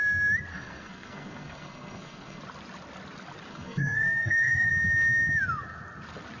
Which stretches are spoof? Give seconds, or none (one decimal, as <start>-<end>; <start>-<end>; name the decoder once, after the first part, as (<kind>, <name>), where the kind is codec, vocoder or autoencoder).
0.5-2.4 (codec, SNAC); 3.5-4.7